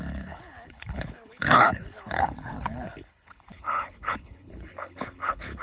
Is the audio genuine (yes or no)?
no